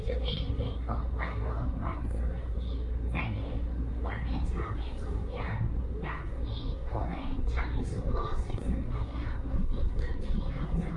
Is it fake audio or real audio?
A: fake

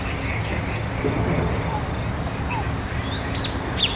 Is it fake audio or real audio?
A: real